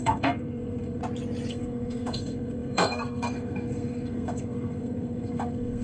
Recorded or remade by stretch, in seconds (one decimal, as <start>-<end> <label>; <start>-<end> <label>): 0.0-1.0 remade; 1.0-1.5 recorded; 1.5-5.8 remade